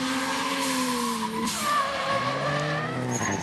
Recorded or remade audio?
recorded